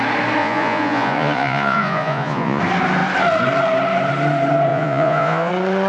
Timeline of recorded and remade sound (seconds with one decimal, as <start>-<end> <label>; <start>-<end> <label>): 0.0-0.4 recorded; 0.4-2.6 remade; 2.6-4.7 recorded; 4.7-5.5 remade; 5.5-5.9 recorded